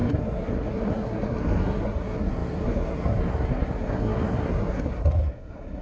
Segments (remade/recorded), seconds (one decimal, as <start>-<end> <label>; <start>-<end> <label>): 0.0-5.8 remade